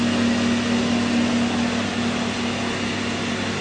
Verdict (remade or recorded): recorded